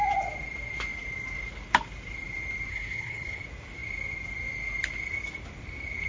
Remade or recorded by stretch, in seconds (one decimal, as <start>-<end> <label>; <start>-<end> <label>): 0.0-2.7 recorded; 2.7-3.4 remade; 3.4-6.1 recorded